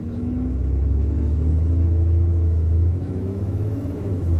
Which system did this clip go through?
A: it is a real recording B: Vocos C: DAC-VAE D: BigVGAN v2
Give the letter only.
C